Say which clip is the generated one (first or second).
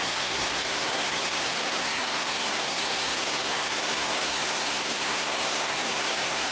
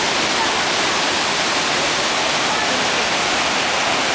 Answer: first